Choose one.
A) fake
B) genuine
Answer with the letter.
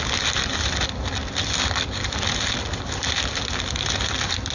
B